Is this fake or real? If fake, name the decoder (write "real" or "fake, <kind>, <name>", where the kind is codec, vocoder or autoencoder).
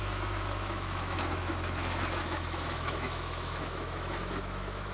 fake, autoencoder, DAC-VAE